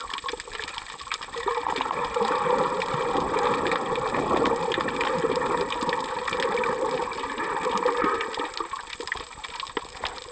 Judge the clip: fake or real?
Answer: real